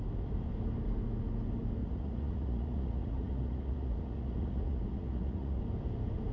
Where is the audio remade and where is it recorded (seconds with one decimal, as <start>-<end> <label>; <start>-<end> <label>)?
0.0-1.8 recorded; 1.8-5.6 remade; 5.6-6.3 recorded